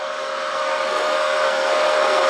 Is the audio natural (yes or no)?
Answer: no